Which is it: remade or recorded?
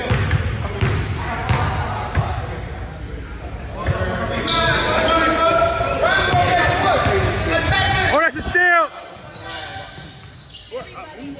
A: recorded